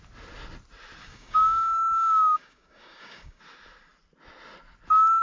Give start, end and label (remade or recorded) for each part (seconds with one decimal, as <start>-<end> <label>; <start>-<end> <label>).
0.0-1.0 recorded; 1.0-3.4 remade; 3.4-5.2 recorded